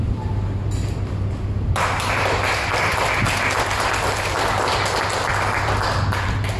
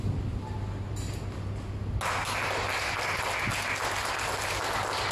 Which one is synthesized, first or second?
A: first